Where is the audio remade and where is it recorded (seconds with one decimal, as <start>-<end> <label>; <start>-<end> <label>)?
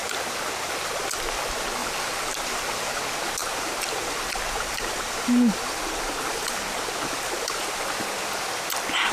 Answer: 0.0-1.8 recorded; 1.8-3.0 remade; 3.0-3.4 recorded; 3.4-7.8 remade; 7.8-9.1 recorded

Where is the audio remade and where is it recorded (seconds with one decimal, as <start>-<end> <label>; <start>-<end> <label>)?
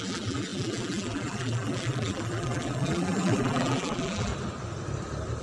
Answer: 0.0-4.3 remade; 4.3-5.4 recorded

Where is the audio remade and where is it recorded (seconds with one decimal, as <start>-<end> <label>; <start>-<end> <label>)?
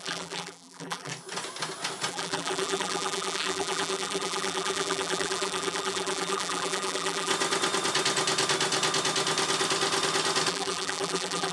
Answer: 0.0-1.1 remade; 1.1-2.1 recorded; 2.1-7.3 remade; 7.3-10.5 recorded; 10.5-11.5 remade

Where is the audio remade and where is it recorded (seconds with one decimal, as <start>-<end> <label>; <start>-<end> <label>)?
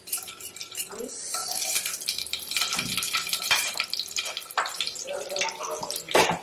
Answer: 0.0-1.4 remade; 1.4-5.2 recorded; 5.2-6.4 remade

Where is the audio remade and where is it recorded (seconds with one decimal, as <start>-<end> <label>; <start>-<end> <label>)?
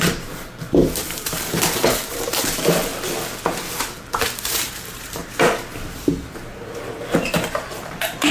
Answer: 0.0-2.9 remade; 2.9-3.7 recorded; 3.7-5.2 remade; 5.2-7.7 recorded; 7.7-8.3 remade